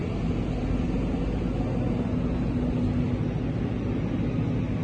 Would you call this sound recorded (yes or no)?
yes